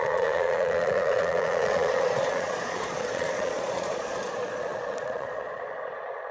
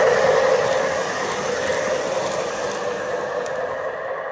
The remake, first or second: first